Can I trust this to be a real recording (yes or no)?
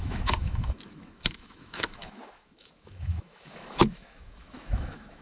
no